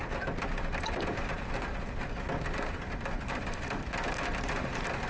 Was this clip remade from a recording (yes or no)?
no